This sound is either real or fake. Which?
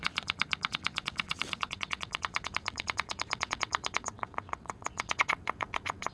fake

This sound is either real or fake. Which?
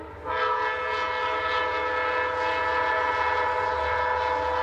real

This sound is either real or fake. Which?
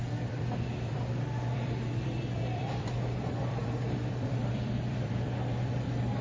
fake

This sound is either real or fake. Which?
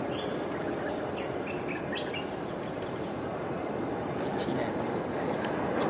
real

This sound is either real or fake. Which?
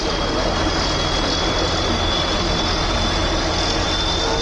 real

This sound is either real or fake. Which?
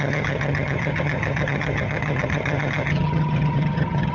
fake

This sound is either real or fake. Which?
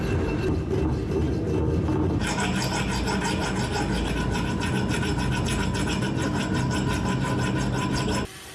real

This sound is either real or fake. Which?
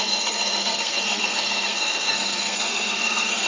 fake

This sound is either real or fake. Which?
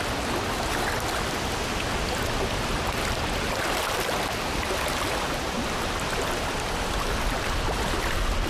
real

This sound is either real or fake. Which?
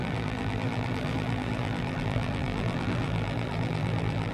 fake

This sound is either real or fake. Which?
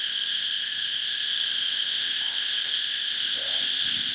fake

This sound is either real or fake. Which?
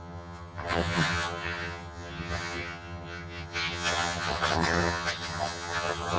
fake